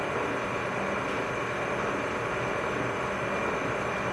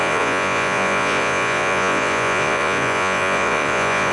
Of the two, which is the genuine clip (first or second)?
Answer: first